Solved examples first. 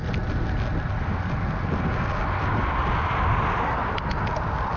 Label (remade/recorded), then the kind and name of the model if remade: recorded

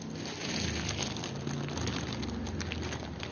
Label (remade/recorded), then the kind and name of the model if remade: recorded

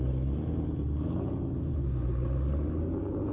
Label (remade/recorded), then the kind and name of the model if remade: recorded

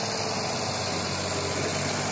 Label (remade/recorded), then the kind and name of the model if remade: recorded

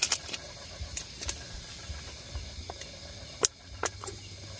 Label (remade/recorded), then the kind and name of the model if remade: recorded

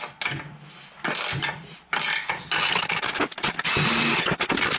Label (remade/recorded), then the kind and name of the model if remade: recorded